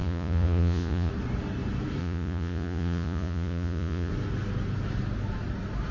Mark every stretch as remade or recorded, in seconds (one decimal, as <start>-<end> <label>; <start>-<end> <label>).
0.0-1.1 remade; 1.1-2.0 recorded; 2.0-4.1 remade; 4.1-5.9 recorded